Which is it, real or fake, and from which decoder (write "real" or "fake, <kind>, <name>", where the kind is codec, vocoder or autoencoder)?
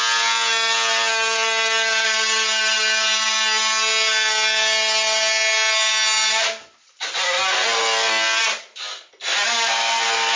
real